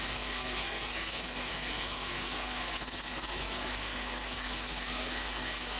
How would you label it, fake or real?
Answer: fake